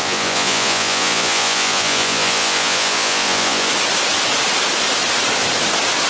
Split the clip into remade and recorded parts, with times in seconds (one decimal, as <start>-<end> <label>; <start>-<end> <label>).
0.0-3.7 remade; 3.7-6.1 recorded